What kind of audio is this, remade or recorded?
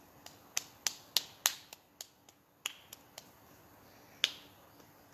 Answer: recorded